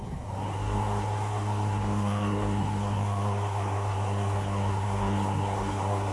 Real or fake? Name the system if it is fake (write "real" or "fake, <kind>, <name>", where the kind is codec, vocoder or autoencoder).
fake, codec, SNAC